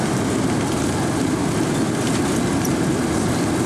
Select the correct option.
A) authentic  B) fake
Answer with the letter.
A